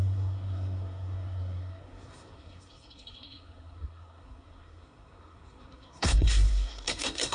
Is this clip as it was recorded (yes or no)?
no